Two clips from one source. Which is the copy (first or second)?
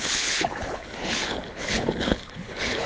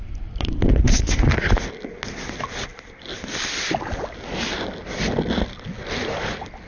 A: first